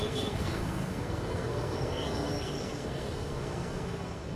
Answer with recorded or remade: remade